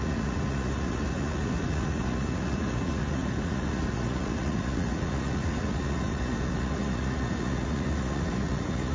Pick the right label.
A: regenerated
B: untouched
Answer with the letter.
A